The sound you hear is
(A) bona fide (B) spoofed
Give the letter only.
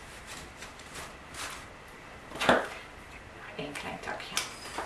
A